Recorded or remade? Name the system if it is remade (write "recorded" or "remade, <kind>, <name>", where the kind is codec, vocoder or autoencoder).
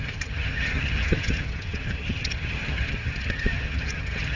remade, vocoder, HiFi-GAN